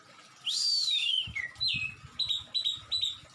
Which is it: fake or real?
real